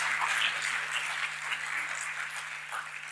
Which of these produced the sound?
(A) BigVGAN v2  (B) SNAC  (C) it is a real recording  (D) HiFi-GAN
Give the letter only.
C